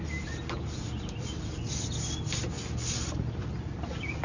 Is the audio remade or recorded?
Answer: recorded